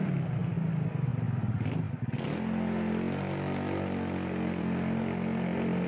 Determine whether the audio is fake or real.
real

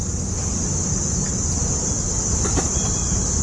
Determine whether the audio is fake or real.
real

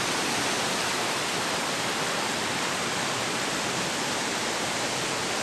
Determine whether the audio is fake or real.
real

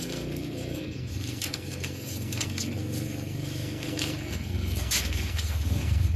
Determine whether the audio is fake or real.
fake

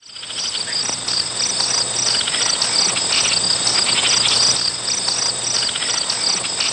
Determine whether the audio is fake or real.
real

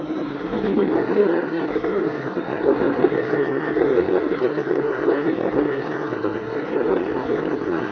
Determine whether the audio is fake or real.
fake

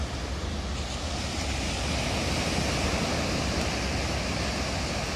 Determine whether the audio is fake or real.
real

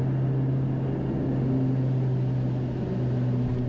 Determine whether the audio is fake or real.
real